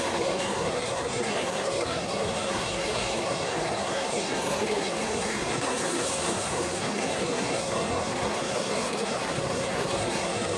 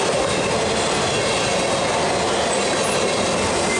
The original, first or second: second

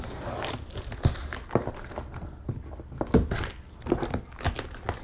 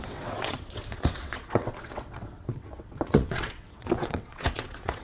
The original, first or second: first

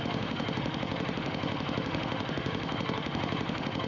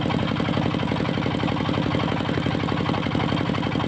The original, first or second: second